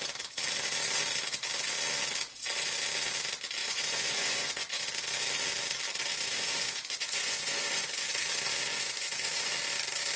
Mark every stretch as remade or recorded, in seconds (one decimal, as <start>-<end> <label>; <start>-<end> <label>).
0.0-3.6 recorded; 3.6-4.8 remade; 4.8-6.1 recorded; 6.1-8.1 remade; 8.1-8.7 recorded; 8.7-9.5 remade; 9.5-10.2 recorded